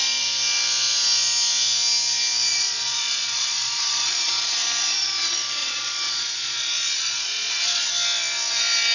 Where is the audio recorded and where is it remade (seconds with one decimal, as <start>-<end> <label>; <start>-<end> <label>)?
0.0-2.5 recorded; 2.5-4.3 remade; 4.3-5.6 recorded; 5.6-7.9 remade; 7.9-8.9 recorded